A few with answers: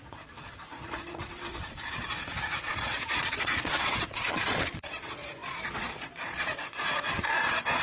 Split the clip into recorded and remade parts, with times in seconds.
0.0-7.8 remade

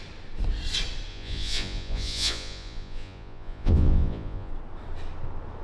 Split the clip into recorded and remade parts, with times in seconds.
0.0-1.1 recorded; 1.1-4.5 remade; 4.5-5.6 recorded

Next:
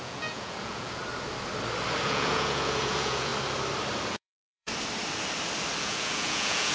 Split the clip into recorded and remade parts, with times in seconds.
0.0-1.0 remade; 1.0-2.0 recorded; 2.0-3.3 remade; 3.3-4.1 recorded; 4.1-4.7 remade; 4.7-5.8 recorded; 5.8-6.7 remade